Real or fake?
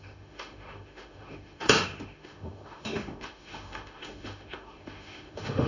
fake